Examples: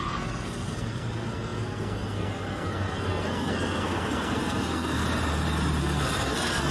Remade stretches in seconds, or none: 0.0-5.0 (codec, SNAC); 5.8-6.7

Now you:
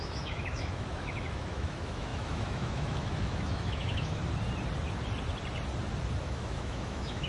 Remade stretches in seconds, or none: 0.0-4.2 (autoencoder, DAC-VAE); 6.2-7.3